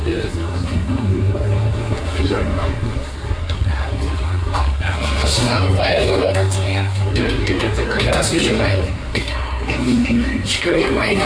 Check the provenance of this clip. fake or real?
fake